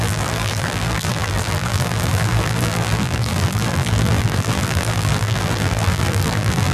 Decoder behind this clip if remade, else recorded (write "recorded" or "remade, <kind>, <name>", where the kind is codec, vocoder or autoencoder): remade, vocoder, BigVGAN v2